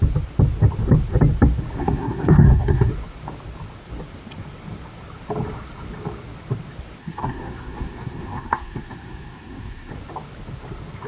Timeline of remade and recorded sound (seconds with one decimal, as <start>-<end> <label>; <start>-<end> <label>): 0.0-1.8 recorded; 1.8-2.9 remade; 2.9-7.0 recorded; 7.0-9.9 remade; 9.9-11.1 recorded